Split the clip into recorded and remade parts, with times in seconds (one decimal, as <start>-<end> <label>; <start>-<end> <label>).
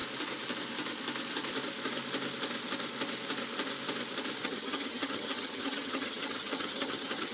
0.0-4.4 recorded; 4.4-7.3 remade